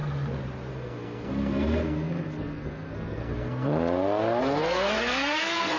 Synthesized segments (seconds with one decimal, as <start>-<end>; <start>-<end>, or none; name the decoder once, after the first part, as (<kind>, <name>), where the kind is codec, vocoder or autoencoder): 0.7-3.7 (codec, SNAC); 4.4-5.8